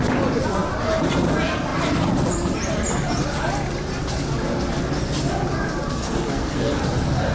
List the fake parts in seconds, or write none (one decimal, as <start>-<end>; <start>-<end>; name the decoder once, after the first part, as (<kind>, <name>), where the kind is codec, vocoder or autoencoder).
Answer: 5.9-6.8 (codec, SNAC)